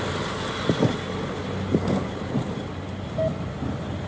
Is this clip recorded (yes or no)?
yes